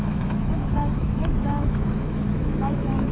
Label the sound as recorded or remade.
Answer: remade